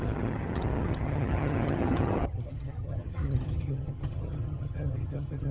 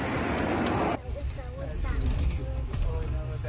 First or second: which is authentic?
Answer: second